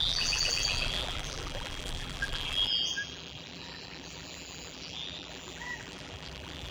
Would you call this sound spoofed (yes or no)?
yes